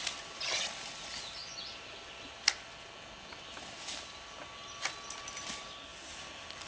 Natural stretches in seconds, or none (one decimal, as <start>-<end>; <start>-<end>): 0.0-6.7